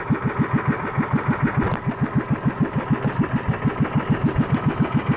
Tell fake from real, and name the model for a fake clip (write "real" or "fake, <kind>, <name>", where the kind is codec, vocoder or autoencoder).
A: real